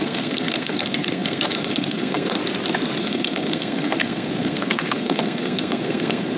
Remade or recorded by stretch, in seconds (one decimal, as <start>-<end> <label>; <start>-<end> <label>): 0.0-2.4 remade; 2.4-3.0 recorded; 3.0-6.4 remade